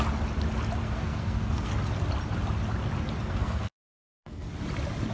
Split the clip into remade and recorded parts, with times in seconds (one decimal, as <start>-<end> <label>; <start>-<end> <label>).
0.0-0.8 recorded; 0.8-1.7 remade; 1.7-3.2 recorded; 3.2-4.5 remade; 4.5-5.1 recorded